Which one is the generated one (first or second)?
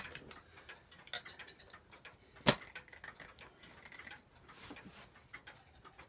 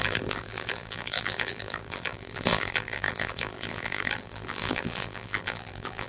second